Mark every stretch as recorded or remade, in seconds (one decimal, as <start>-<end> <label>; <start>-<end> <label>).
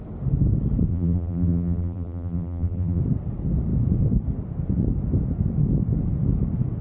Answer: 0.0-0.9 recorded; 0.9-3.0 remade; 3.0-6.8 recorded